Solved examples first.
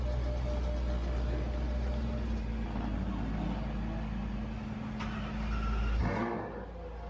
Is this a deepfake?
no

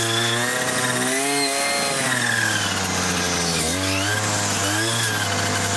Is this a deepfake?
no